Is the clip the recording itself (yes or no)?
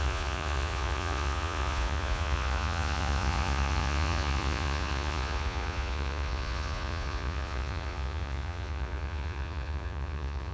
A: no